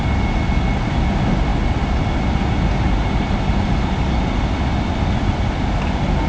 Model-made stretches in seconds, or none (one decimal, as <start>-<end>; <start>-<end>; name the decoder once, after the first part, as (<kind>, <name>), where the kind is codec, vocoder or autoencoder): none